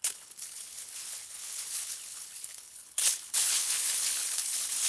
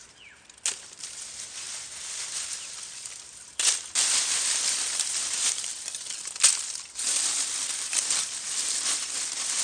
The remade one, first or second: first